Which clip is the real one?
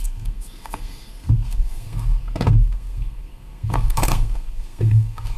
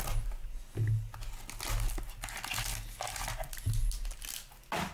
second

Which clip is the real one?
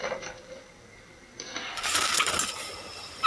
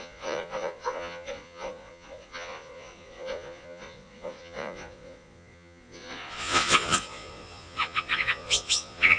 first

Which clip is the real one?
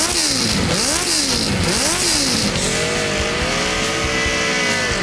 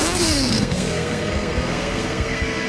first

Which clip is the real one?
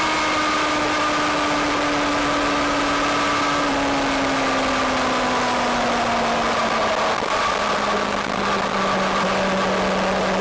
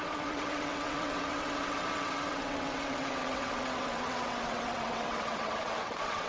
first